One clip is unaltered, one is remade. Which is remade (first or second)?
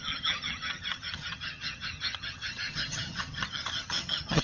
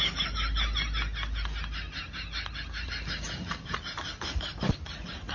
first